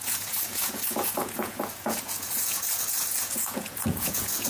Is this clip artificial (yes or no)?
yes